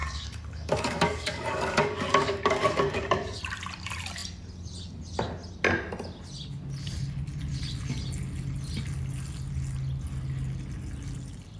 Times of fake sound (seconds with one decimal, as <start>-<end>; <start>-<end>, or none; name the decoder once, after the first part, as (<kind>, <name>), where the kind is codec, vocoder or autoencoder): 0.0-3.4 (codec, DAC)

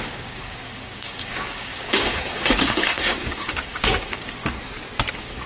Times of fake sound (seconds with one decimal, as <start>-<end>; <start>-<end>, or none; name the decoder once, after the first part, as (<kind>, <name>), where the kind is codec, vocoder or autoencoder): 0.0-4.4 (codec, DAC); 5.1-5.5

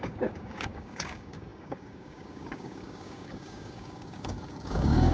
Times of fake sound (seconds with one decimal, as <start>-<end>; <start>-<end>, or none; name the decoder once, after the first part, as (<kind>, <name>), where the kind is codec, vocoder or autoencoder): 0.0-5.1 (codec, DAC)

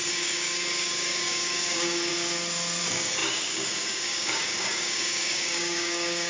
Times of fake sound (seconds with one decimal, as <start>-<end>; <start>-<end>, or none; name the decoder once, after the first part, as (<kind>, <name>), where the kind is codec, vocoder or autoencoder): 0.0-2.1 (codec, DAC); 2.8-6.3

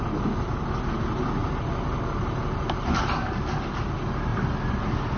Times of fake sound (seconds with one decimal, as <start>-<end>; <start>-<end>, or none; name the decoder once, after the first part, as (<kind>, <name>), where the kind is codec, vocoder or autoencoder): none

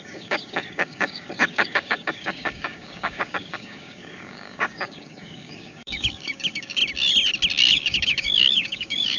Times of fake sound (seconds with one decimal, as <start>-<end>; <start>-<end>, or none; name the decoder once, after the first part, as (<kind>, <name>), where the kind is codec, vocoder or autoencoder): 0.0-6.8 (codec, DAC); 7.7-9.2

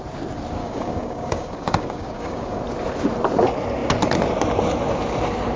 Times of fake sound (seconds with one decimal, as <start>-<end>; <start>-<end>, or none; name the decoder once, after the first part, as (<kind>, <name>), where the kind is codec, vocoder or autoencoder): 0.6-2.6 (codec, DAC)